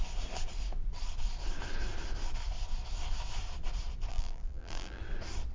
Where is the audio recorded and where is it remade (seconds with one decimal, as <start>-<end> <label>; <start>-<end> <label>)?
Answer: 0.0-4.1 recorded; 4.1-5.0 remade; 5.0-5.5 recorded